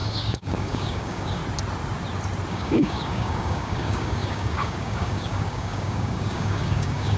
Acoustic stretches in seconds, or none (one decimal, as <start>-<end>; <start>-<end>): 1.4-2.5